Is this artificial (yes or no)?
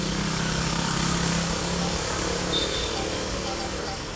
yes